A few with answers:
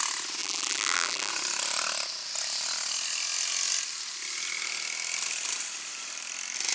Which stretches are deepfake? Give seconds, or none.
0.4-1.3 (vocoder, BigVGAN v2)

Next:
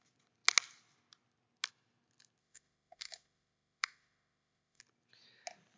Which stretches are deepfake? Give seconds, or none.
2.4-4.8 (autoencoder, DAC-VAE)

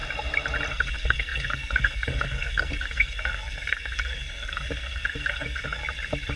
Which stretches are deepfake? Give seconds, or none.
0.7-5.8 (codec, SNAC)